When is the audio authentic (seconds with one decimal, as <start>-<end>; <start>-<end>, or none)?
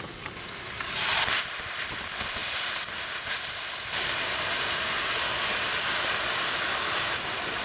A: 0.0-7.6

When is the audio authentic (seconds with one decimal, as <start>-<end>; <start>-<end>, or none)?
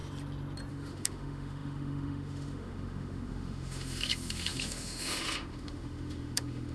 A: 0.0-0.7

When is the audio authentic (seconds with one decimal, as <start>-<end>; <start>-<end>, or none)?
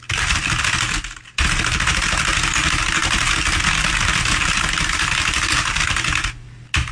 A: 0.0-6.9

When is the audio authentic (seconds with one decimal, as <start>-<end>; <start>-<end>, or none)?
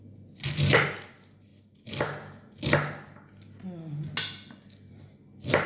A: 0.0-5.7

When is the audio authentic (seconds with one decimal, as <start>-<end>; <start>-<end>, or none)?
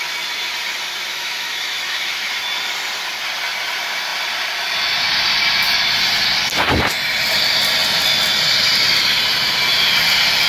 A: 0.0-1.1; 2.3-10.5